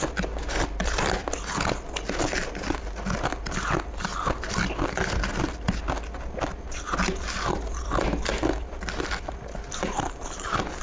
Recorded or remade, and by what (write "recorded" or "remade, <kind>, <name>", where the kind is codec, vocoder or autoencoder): recorded